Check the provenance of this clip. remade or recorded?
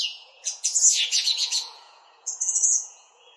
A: remade